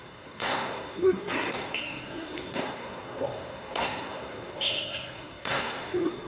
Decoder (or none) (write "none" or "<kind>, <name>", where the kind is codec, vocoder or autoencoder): codec, SNAC